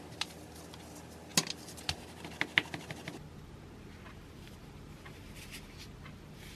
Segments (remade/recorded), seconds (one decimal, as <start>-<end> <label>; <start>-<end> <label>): 0.0-6.6 recorded